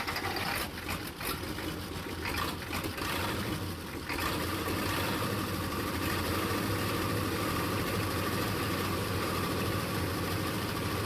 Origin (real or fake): real